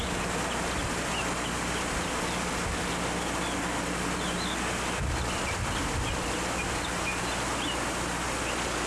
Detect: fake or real real